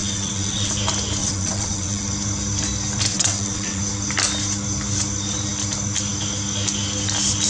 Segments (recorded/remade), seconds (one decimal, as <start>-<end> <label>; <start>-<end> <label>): 0.0-0.7 remade; 0.7-1.2 recorded; 1.2-2.1 remade; 2.1-3.1 recorded; 3.1-3.8 remade; 3.8-7.5 recorded